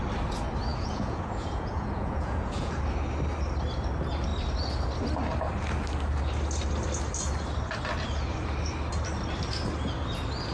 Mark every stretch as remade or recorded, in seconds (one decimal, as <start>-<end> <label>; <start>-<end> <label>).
0.0-0.7 recorded; 0.7-2.8 remade; 2.8-10.5 recorded